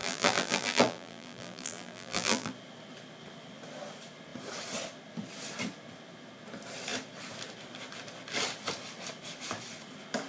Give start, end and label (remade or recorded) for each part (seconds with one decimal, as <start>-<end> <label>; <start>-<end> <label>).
0.0-2.5 remade; 2.5-10.3 recorded